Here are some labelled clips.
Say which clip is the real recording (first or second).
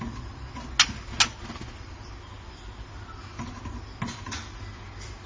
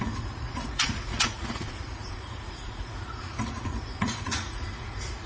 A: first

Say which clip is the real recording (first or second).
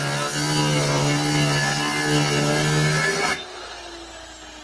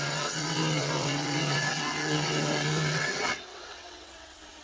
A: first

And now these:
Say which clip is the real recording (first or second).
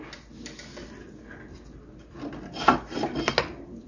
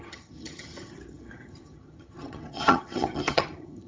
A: first